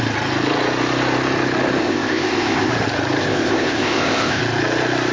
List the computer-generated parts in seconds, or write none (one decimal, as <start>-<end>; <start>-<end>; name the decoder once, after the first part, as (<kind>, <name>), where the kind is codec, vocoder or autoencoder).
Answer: 1.8-2.7 (codec, ZipCodec); 3.2-4.4